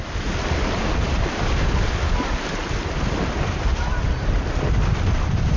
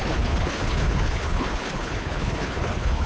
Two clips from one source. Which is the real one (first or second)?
first